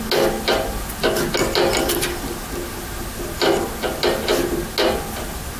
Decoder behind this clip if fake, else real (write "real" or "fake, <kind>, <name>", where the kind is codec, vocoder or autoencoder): real